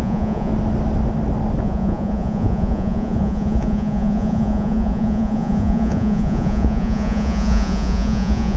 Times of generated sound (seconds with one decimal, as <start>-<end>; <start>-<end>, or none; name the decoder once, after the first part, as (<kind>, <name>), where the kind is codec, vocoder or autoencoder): 0.0-0.5 (vocoder, Vocos); 1.6-8.6